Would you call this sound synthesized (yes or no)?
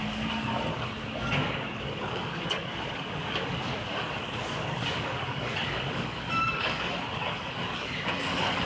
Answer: yes